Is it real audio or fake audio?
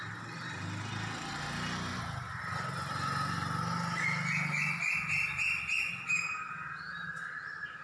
real